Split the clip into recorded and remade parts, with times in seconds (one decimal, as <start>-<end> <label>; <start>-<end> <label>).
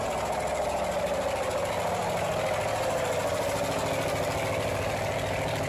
0.0-5.7 recorded